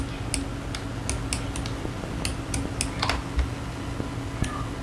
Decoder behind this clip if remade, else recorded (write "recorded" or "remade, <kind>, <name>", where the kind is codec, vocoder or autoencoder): recorded